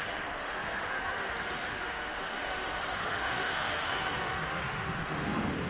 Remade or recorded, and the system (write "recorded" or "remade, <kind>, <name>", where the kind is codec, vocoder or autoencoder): remade, autoencoder, DAC-VAE